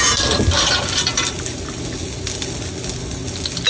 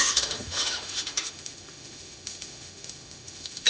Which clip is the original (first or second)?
first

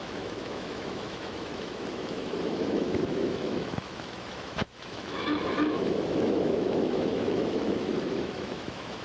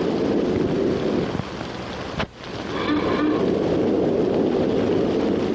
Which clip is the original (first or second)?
second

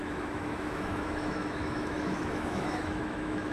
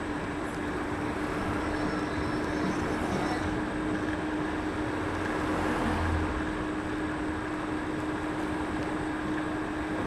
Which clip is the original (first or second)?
second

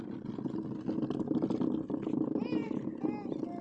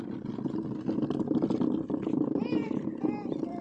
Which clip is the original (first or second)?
first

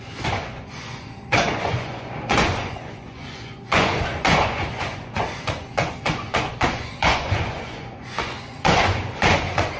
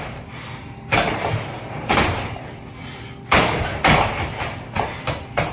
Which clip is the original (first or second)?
second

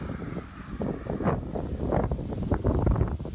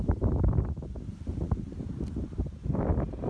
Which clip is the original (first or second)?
second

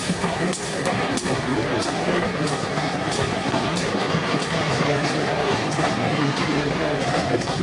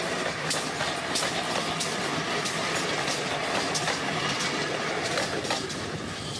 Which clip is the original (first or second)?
second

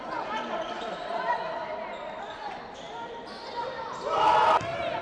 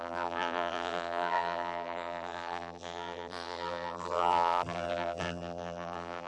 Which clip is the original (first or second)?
first